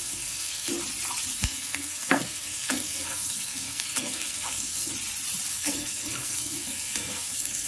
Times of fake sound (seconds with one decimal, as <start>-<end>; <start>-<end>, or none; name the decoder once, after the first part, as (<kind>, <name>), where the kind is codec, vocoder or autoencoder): 0.0-0.7 (codec, SNAC); 1.3-4.9; 5.5-7.7